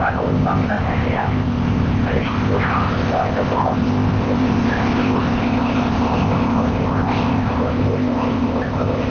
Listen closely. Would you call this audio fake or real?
fake